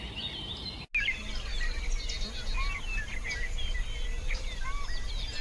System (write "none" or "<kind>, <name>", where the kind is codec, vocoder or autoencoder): none